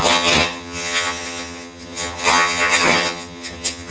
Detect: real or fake fake